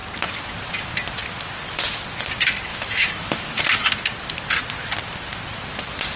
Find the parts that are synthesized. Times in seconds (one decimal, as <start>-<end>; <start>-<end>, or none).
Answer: 2.7-3.6